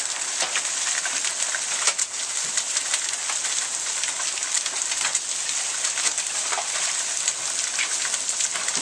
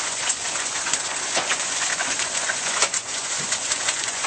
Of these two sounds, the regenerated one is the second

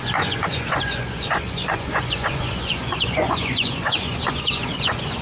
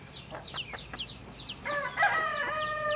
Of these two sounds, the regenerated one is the first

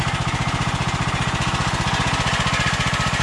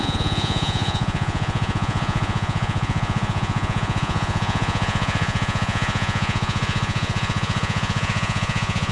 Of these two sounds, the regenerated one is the second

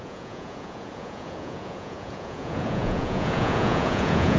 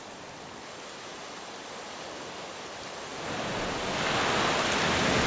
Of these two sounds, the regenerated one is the first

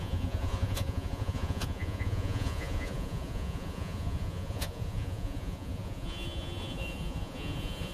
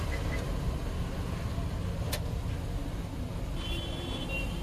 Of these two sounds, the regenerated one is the first